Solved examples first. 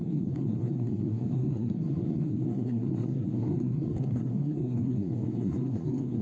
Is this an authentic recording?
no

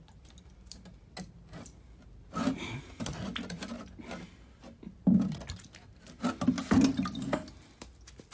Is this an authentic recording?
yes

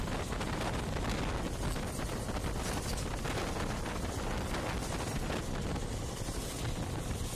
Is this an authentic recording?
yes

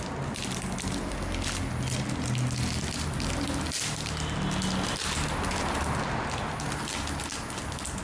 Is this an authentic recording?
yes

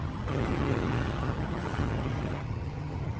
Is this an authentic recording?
no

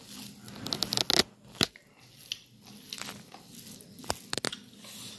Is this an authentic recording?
yes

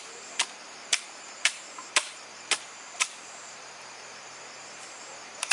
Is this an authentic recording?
no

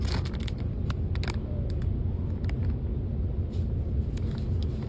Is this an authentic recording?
yes